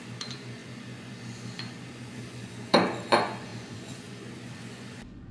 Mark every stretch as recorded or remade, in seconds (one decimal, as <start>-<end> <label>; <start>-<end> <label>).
0.0-5.3 remade